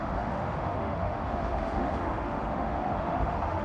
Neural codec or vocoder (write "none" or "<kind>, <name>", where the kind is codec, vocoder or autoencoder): autoencoder, DAC-VAE